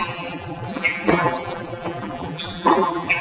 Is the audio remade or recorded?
remade